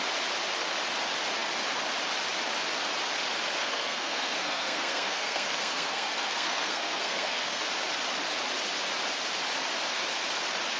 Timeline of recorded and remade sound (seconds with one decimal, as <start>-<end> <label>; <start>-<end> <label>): 0.0-3.6 recorded; 3.6-7.6 remade; 7.6-10.8 recorded